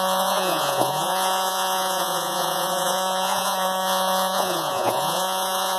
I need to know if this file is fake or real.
fake